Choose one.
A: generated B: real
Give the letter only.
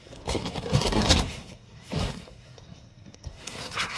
A